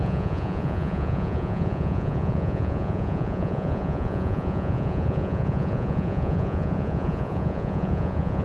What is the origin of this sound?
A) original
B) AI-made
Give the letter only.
B